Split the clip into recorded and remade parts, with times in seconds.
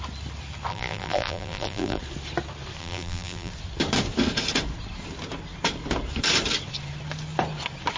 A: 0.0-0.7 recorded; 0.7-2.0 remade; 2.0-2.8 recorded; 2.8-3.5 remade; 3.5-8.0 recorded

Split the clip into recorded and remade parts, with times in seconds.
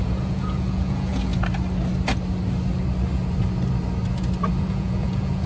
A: 0.0-1.3 remade; 1.3-4.6 recorded; 4.6-5.5 remade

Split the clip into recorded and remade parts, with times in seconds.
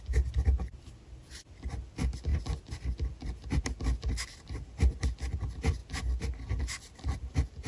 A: 0.0-7.7 recorded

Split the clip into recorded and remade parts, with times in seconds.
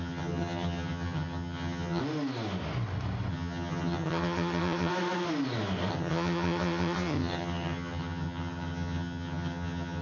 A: 0.0-2.0 remade; 2.0-3.3 recorded; 3.3-4.9 remade; 4.9-5.9 recorded; 5.9-10.0 remade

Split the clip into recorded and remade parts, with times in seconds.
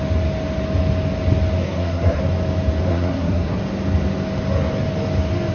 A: 0.0-1.6 recorded; 1.6-2.2 remade; 2.2-2.9 recorded; 2.9-3.6 remade; 3.6-5.5 recorded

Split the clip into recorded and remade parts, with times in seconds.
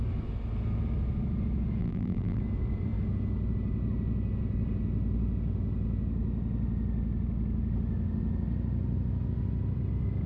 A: 0.0-1.8 recorded; 1.8-2.4 remade; 2.4-10.3 recorded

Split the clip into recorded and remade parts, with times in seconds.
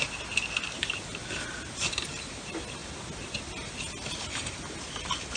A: 0.0-5.4 recorded